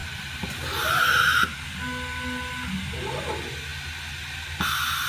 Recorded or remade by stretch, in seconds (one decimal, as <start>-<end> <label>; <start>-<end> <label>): 0.0-1.0 remade; 1.0-5.1 recorded